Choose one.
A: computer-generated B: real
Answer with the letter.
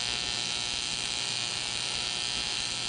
A